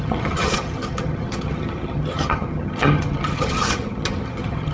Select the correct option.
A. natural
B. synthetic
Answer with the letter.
B